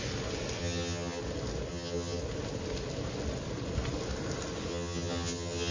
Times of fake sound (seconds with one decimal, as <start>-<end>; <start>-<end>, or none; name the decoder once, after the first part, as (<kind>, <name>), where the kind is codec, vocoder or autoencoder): 0.6-1.2 (vocoder, HiFi-GAN); 1.7-2.2; 4.7-5.7